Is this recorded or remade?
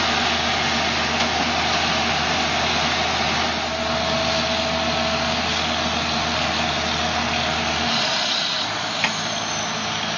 recorded